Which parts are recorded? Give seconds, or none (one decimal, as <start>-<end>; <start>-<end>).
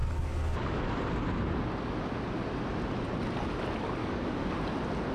0.9-4.0; 4.5-5.1